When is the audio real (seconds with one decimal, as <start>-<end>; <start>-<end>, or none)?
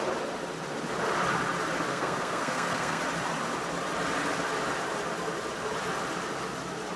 0.0-1.9; 3.0-7.0